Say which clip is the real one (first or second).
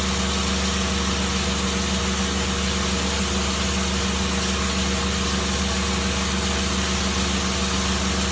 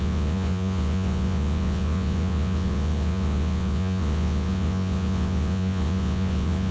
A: first